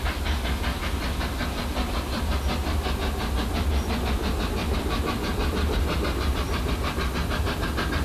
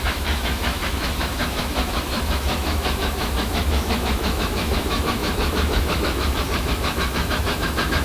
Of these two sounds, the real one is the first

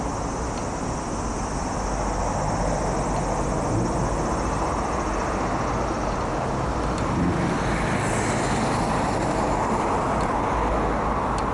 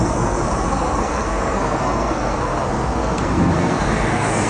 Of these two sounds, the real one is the first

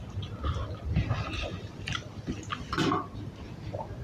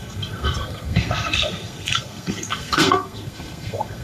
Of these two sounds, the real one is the first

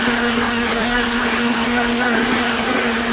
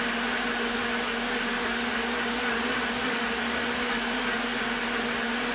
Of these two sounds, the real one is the second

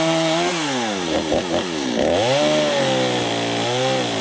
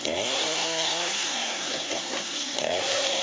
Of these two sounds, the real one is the first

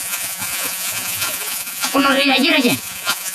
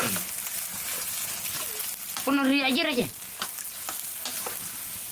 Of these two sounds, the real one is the second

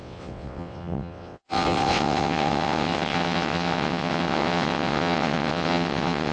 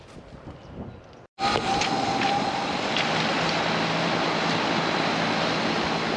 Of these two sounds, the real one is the second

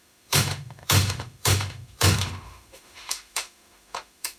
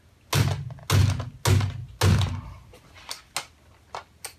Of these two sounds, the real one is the second